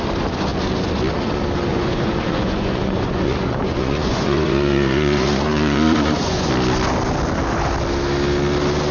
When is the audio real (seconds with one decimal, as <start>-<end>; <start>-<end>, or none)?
0.0-1.7; 6.5-8.9

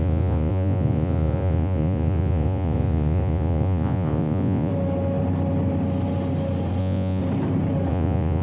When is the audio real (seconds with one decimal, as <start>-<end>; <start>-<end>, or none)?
4.7-6.8; 7.2-7.9

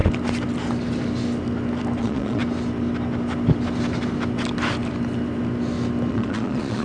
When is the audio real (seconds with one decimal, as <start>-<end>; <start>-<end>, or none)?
0.0-2.0; 2.4-6.1

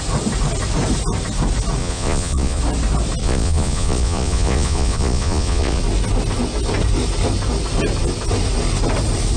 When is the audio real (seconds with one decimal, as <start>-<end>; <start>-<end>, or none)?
0.0-1.8; 2.6-3.2; 5.8-9.4

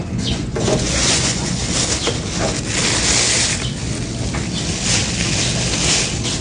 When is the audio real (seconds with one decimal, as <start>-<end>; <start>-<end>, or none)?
1.6-6.4